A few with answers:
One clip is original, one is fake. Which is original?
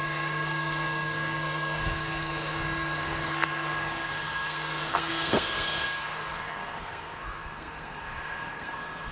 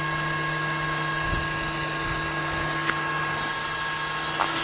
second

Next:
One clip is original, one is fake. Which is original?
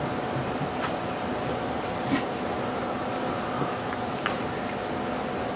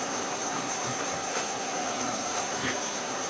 first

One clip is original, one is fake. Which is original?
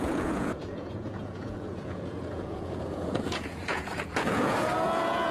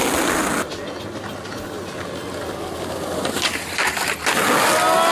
second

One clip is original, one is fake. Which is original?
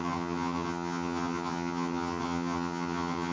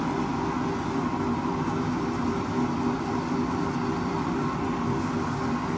second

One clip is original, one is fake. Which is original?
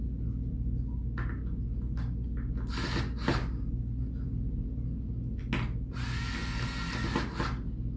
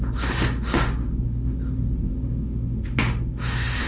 first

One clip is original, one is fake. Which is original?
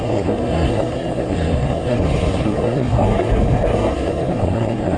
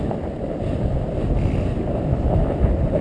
second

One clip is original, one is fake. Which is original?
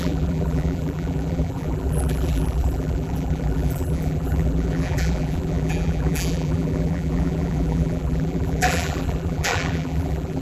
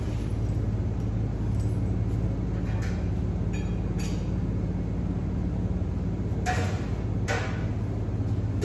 second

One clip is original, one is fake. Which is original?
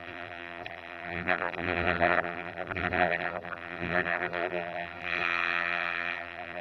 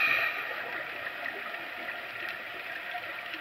second